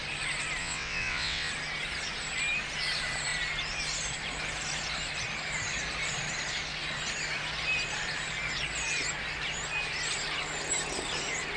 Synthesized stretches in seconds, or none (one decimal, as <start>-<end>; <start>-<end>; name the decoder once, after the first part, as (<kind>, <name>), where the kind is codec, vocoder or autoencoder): 0.6-1.5 (vocoder, WaveNeXt)